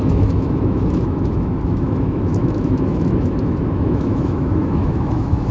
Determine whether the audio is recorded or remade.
remade